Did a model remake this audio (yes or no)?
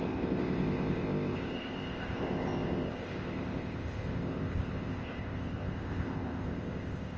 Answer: yes